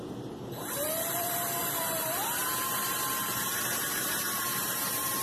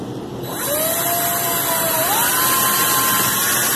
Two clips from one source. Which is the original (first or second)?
second